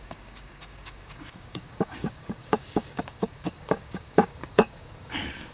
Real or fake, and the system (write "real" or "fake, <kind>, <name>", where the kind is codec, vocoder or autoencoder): fake, codec, DAC